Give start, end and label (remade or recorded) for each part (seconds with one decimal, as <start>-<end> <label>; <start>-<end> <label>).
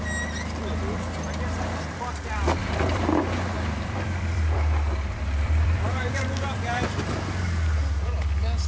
0.0-2.6 recorded; 2.6-7.1 remade; 7.1-8.7 recorded